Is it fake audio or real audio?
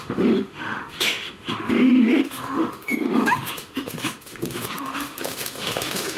fake